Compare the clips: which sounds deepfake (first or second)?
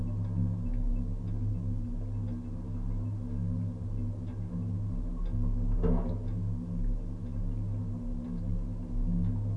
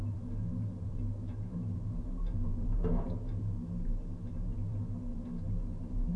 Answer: second